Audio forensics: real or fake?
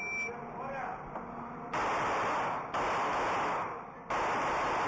real